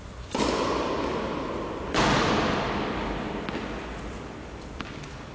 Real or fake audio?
real